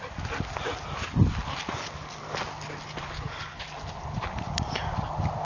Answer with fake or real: real